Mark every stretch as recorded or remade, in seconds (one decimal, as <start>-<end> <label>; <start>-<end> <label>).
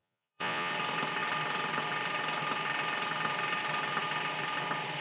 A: 0.0-0.7 remade; 0.7-5.0 recorded